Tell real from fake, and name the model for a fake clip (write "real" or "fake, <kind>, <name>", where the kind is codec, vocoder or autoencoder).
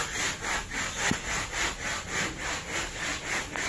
real